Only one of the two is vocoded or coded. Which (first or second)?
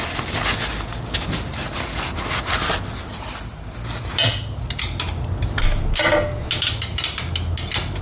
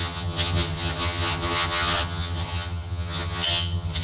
second